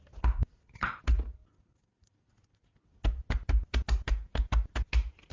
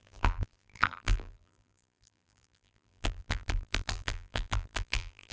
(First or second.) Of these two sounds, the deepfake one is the second